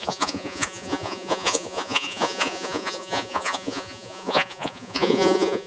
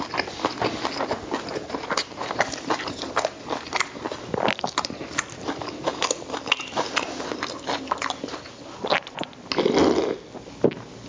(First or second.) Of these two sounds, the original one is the second